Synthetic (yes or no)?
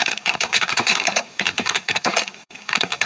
yes